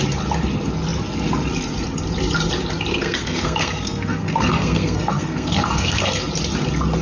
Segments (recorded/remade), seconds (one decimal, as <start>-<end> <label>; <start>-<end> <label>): 0.0-2.9 recorded; 2.9-6.2 remade; 6.2-7.0 recorded